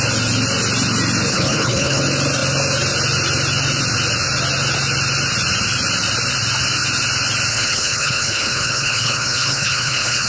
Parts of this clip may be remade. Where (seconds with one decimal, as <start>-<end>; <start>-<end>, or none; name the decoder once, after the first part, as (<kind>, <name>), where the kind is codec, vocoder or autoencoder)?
1.3-2.0 (codec, HILCodec); 7.5-10.3